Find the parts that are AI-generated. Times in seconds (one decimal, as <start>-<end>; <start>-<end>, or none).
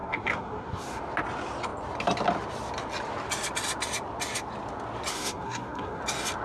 0.0-1.0; 5.1-6.0